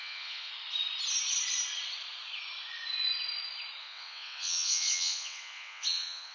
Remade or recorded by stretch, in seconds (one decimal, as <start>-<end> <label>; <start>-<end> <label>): 0.0-0.5 remade; 0.5-3.8 recorded; 3.8-6.3 remade